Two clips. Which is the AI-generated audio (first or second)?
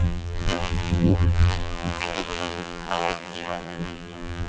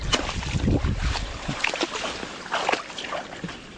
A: first